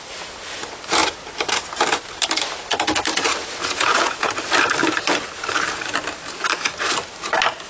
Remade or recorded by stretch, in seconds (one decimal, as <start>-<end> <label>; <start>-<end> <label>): 0.0-3.6 recorded; 3.6-4.3 remade; 4.3-7.7 recorded